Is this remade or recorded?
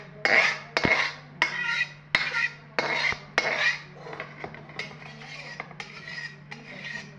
recorded